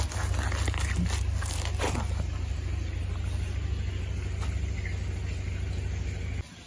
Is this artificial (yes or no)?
no